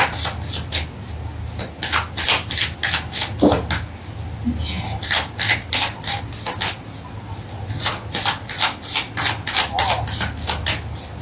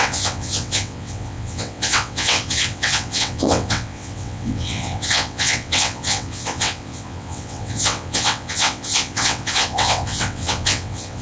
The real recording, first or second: first